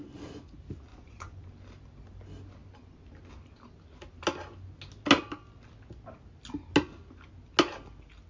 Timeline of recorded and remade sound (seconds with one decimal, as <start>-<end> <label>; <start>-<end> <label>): 0.0-0.9 recorded; 0.9-1.4 remade; 1.4-8.3 recorded